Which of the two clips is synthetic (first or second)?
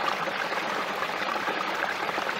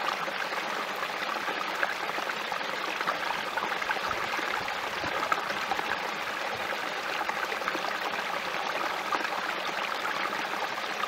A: first